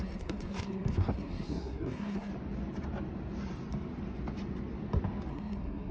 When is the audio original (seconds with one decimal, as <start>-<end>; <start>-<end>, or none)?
2.3-5.3